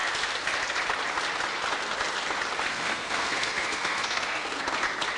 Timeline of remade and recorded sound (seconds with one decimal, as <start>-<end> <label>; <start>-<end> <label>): 0.0-2.7 recorded; 2.7-4.6 remade; 4.6-5.2 recorded